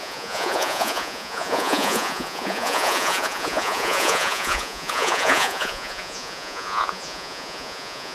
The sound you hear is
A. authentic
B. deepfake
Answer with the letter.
B